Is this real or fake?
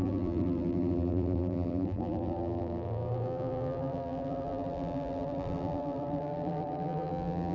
fake